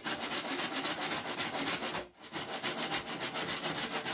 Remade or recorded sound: recorded